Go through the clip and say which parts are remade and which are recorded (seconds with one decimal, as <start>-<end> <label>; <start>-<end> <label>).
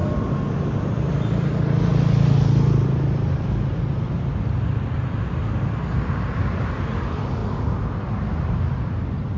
0.0-9.4 recorded